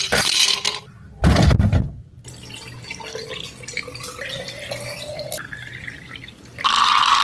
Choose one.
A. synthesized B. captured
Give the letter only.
B